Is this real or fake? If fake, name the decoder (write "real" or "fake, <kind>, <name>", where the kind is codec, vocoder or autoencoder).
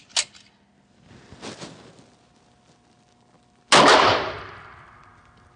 real